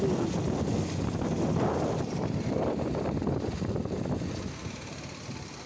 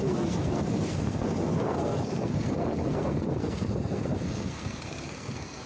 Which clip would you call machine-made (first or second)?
second